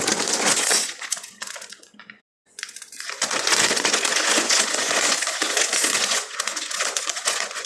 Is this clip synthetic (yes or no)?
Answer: yes